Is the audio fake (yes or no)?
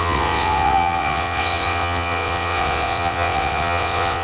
yes